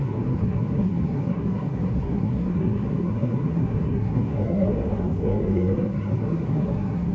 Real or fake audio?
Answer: fake